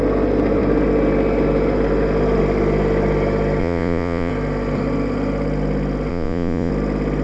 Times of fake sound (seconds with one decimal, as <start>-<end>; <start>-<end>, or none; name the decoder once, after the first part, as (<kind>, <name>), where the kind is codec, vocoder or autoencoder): 3.6-4.3 (vocoder, Vocos); 6.1-6.7